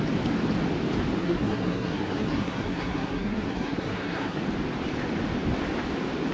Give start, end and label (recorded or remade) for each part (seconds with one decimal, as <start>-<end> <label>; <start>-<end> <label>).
0.0-1.2 recorded; 1.2-4.4 remade; 4.4-6.3 recorded